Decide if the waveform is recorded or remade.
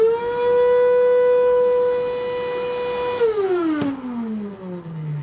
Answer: recorded